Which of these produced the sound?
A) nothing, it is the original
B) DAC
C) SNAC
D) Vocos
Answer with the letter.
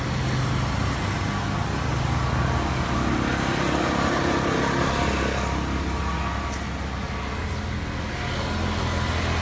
A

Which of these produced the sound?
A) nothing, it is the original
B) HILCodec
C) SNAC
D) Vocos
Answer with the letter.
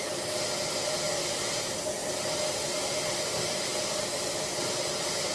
A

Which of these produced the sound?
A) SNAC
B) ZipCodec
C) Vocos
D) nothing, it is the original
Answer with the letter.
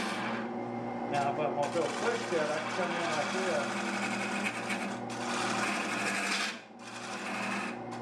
D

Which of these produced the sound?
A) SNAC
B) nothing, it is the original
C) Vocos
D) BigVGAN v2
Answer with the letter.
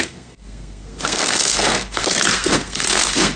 A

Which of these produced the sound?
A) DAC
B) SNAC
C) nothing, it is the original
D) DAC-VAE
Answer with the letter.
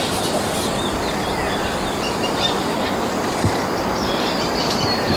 C